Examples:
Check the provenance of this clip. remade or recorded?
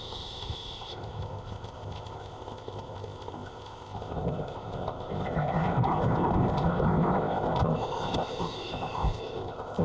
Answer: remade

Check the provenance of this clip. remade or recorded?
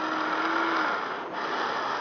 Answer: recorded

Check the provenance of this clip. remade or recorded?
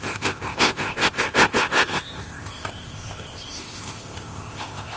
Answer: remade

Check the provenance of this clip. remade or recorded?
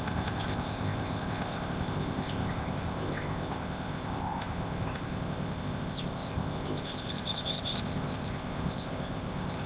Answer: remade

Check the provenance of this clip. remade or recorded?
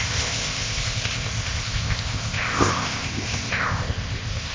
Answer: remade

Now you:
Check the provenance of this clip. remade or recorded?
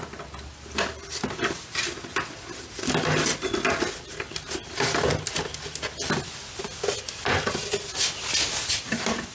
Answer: recorded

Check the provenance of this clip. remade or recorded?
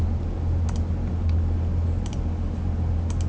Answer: recorded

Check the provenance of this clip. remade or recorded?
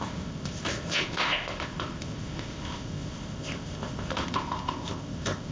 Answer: remade